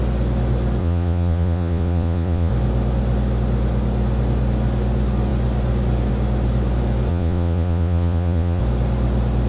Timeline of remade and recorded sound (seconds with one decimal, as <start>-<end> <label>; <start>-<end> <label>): 0.0-0.8 recorded; 0.8-2.5 remade; 2.5-7.1 recorded; 7.1-8.6 remade; 8.6-9.5 recorded